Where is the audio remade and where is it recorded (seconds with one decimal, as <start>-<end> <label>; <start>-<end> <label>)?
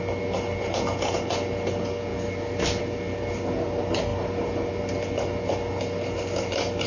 0.0-6.9 recorded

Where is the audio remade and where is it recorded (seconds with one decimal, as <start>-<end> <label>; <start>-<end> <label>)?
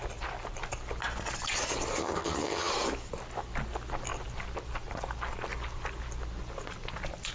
0.0-2.0 recorded; 2.0-2.7 remade; 2.7-7.3 recorded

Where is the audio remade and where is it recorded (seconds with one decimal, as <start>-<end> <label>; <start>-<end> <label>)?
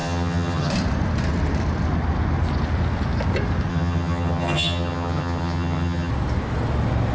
0.0-0.7 remade; 0.7-3.7 recorded; 3.7-6.1 remade; 6.1-7.1 recorded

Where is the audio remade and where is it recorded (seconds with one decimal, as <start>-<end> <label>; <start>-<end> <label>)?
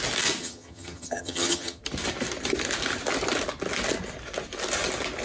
0.0-0.4 recorded; 0.4-1.8 remade; 1.8-5.2 recorded